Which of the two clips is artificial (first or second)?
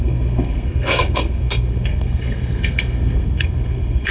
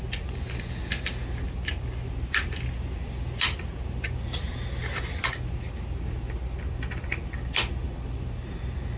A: first